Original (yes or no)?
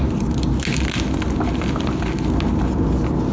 yes